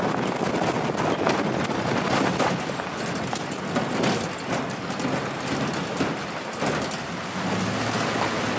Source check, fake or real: real